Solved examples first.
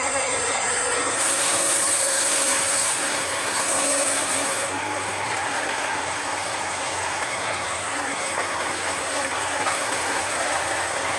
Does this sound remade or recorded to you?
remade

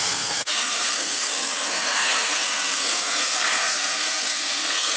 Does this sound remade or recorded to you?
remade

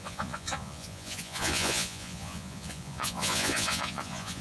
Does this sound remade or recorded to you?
remade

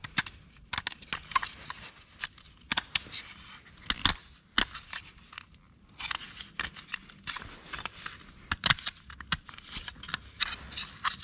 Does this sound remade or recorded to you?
recorded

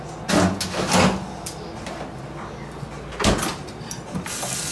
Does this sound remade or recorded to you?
recorded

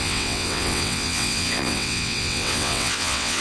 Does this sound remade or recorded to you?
remade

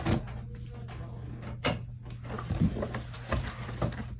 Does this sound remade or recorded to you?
recorded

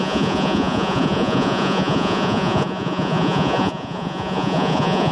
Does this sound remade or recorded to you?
remade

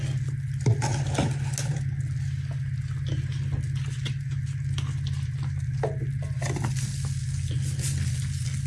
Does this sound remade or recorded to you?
recorded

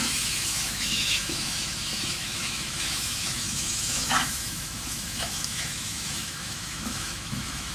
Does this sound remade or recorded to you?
remade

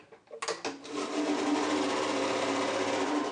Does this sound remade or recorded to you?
recorded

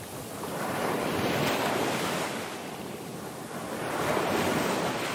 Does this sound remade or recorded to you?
recorded